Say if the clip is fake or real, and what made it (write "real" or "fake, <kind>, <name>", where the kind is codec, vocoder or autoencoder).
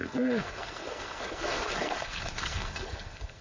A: fake, codec, SNAC